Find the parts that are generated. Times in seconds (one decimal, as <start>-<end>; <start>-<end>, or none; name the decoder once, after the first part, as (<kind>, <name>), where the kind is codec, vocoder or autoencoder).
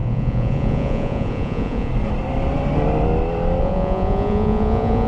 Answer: 0.0-1.9 (vocoder, Vocos); 3.6-5.1